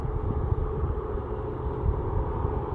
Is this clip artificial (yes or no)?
no